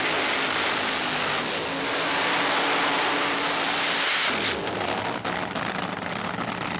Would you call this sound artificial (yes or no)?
no